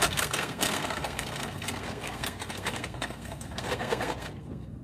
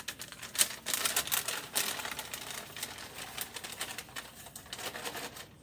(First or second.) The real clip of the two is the second